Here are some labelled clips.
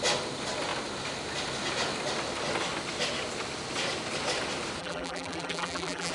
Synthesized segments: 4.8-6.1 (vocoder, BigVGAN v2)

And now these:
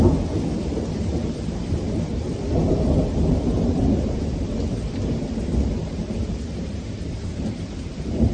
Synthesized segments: 0.6-8.3 (vocoder, BigVGAN v2)

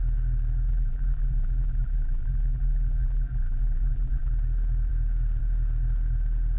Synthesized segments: 0.7-4.3 (vocoder, BigVGAN v2)

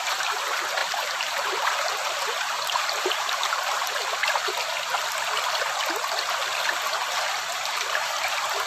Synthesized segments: 0.0-4.0 (vocoder, BigVGAN v2); 7.1-8.7

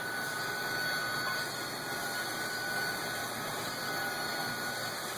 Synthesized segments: none

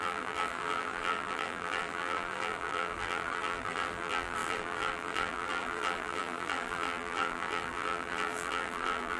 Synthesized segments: 0.0-9.2 (vocoder, BigVGAN v2)

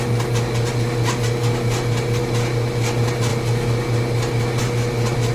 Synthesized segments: none